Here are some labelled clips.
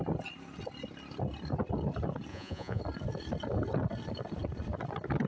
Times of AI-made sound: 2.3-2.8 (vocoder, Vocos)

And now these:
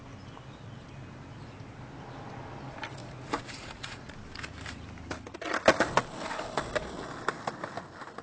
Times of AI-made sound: 3.0-4.1 (vocoder, Vocos)

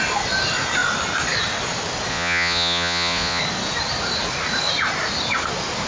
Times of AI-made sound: 2.1-3.4 (vocoder, Vocos)